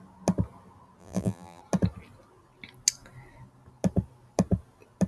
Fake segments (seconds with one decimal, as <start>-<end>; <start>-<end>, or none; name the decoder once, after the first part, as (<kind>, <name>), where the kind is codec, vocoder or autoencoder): 1.0-1.6 (vocoder, BigVGAN v2)